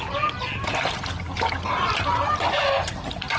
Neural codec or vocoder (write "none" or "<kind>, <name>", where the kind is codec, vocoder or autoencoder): none